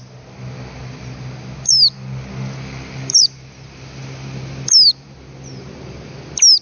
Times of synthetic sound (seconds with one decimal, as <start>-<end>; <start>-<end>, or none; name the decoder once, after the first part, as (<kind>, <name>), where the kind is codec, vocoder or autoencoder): none